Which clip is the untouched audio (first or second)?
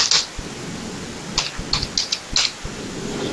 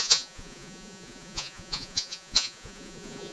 first